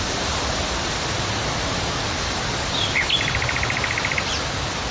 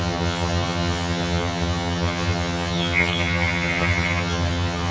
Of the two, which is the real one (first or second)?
first